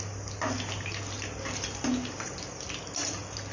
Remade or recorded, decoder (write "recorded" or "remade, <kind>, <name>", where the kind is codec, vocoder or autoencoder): recorded